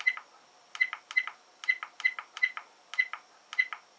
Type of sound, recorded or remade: recorded